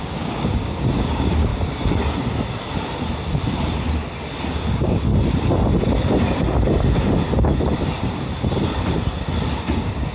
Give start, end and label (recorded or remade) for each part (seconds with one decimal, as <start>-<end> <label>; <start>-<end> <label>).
0.0-1.5 remade; 1.5-4.5 recorded; 4.5-5.1 remade; 5.1-9.5 recorded; 9.5-10.1 remade